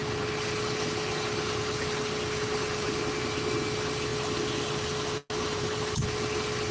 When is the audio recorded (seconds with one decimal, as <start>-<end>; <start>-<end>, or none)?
0.0-6.7